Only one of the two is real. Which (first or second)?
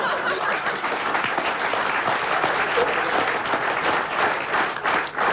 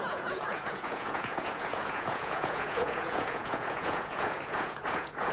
first